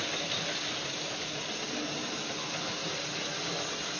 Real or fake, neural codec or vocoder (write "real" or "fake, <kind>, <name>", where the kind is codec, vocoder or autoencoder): real